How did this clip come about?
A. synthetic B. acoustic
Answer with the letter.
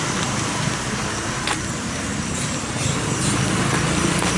B